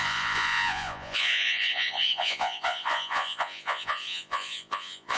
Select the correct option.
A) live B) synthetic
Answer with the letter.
B